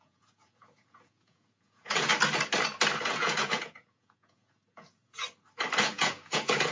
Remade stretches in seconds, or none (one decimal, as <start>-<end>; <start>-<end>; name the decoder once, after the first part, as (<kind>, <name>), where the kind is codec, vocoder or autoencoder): 0.0-2.1 (vocoder, Vocos); 3.0-5.2; 5.8-6.7